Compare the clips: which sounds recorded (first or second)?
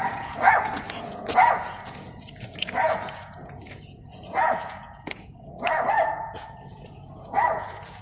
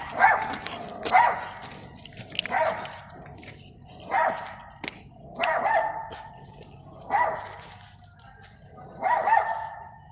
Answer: second